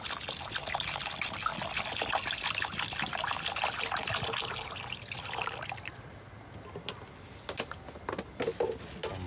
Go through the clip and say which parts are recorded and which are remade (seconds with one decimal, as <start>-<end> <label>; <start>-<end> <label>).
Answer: 0.0-9.3 recorded